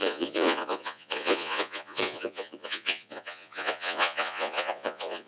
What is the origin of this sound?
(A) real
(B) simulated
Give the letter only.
B